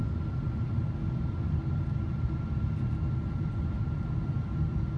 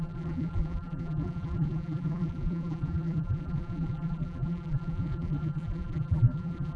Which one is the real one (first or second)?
first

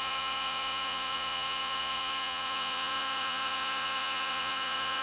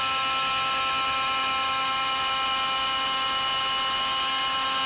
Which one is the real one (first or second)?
second